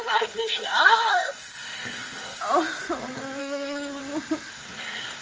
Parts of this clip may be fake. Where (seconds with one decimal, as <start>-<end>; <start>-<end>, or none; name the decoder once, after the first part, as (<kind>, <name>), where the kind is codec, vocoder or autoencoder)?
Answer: 0.0-2.4 (codec, SNAC); 3.4-4.0; 4.5-5.2